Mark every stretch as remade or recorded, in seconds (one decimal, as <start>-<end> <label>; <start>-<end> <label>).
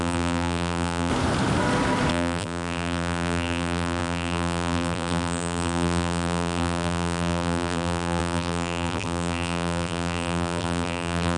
0.0-1.1 remade; 1.1-2.1 recorded; 2.1-11.4 remade